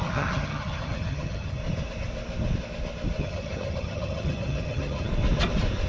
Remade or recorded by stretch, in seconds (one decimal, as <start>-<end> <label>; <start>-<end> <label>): 0.0-1.6 remade; 1.6-3.2 recorded; 3.2-5.1 remade; 5.1-5.9 recorded